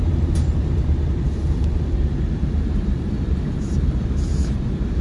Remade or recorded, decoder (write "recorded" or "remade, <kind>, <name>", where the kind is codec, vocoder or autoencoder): remade, vocoder, BigVGAN v2